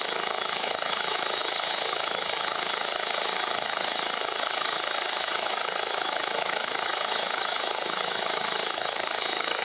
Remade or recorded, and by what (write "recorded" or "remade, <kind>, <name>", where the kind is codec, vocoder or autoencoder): remade, autoencoder, DAC-VAE